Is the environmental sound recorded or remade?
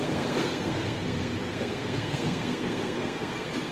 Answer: remade